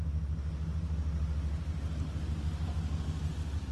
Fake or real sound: real